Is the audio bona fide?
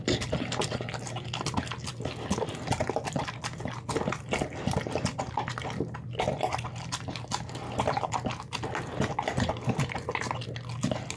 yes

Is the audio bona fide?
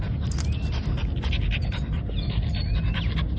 yes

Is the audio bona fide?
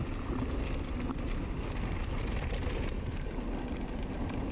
yes